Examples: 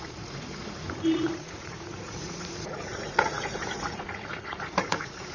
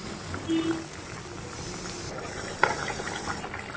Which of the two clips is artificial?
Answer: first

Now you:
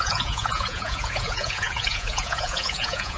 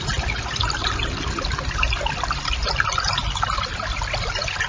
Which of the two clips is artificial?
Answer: first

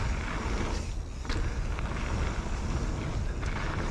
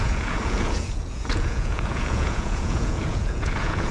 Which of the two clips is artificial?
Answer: second